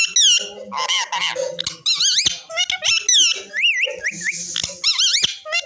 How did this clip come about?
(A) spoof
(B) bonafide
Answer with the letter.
B